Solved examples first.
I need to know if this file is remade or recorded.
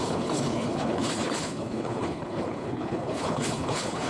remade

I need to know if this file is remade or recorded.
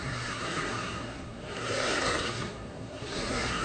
remade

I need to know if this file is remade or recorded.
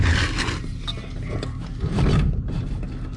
recorded